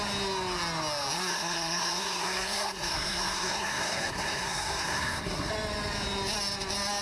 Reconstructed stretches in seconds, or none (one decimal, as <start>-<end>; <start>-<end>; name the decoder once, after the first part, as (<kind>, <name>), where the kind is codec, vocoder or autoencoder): 1.3-5.5 (codec, SNAC)